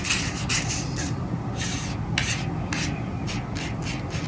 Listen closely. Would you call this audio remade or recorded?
recorded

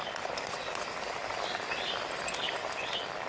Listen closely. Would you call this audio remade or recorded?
recorded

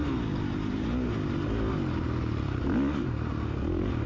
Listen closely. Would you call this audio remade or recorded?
recorded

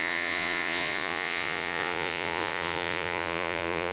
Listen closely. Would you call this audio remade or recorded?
remade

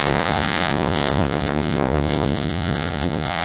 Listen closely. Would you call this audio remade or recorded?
remade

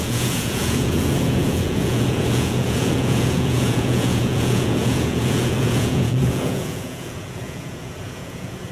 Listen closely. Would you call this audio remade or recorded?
remade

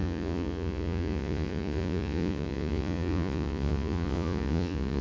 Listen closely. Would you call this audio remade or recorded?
remade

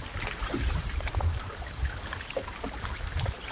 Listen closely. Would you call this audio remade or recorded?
recorded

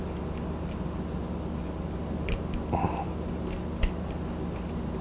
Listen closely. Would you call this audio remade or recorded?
recorded